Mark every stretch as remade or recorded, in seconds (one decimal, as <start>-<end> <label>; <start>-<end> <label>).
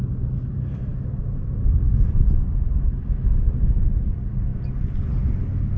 0.0-5.8 recorded